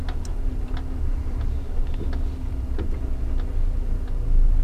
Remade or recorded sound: recorded